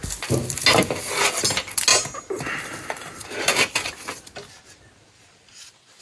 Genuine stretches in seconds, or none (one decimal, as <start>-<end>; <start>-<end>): 0.0-6.0